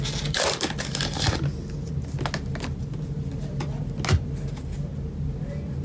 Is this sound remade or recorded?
recorded